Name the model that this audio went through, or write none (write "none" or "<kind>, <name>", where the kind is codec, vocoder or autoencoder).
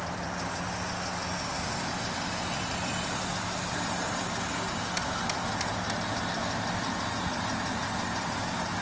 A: none